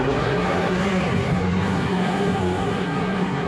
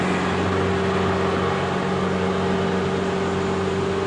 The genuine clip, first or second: second